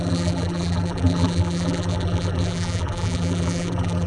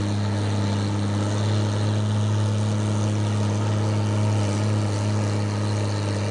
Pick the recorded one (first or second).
second